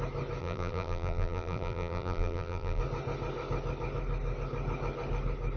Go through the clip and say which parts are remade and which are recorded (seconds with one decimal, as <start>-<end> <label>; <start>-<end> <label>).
0.0-0.4 recorded; 0.4-2.8 remade; 2.8-5.6 recorded